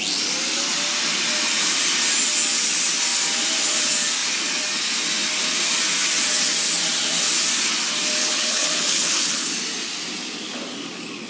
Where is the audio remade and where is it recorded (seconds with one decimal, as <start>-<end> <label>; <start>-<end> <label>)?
0.0-8.2 recorded; 8.2-9.5 remade; 9.5-11.3 recorded